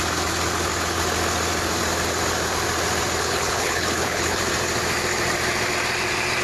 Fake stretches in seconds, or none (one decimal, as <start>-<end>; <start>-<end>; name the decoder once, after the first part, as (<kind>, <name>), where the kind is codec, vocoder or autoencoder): 3.2-4.4 (codec, HILCodec)